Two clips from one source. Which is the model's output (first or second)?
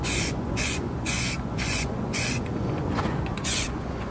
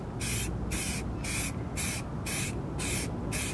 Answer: first